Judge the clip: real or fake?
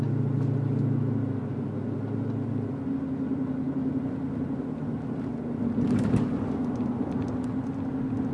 real